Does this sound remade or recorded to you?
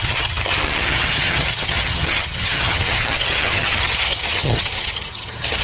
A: remade